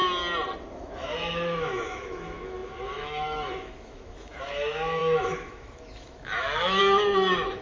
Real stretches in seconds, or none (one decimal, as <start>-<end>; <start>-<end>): 0.0-0.7